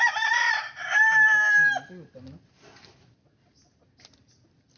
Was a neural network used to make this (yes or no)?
no